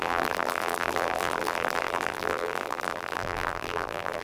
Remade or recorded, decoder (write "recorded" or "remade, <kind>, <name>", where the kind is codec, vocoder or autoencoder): remade, vocoder, BigVGAN v2